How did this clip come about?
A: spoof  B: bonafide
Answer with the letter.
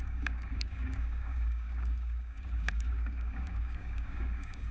A